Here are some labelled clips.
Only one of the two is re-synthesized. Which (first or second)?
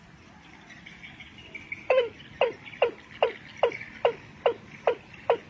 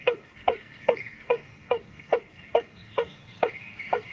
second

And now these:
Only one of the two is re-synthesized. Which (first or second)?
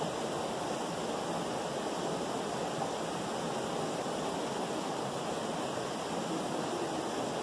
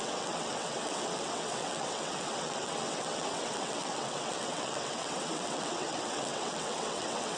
second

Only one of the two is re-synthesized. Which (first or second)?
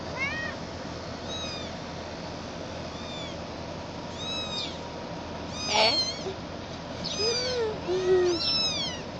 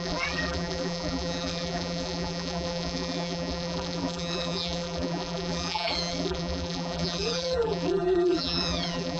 second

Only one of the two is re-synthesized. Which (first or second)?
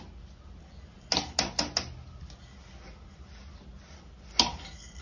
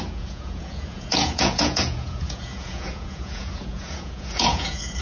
second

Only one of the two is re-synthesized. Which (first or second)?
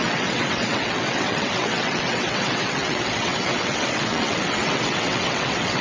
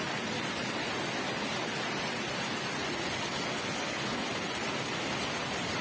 first